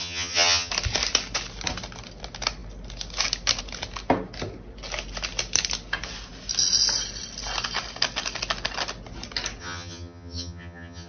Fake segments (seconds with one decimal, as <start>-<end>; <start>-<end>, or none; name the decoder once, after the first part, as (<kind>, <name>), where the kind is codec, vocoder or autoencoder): 0.0-0.7 (vocoder, HiFi-GAN); 9.6-11.1